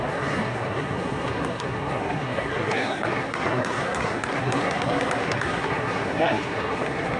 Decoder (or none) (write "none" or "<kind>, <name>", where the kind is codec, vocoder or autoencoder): codec, SNAC